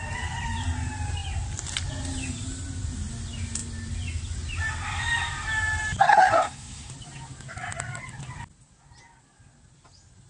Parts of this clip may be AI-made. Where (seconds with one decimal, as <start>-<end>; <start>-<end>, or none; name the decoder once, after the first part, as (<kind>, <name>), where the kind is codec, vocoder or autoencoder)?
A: 6.1-6.9 (codec, SNAC)

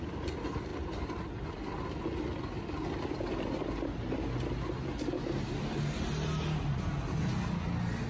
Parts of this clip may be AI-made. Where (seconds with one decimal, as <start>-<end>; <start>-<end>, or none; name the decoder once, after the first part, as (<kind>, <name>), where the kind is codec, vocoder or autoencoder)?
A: none

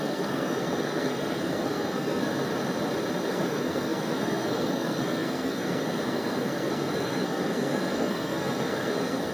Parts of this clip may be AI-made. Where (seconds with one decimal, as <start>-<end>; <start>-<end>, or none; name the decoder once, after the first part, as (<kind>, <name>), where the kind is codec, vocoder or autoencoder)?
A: 0.0-2.4 (codec, SNAC); 3.3-9.3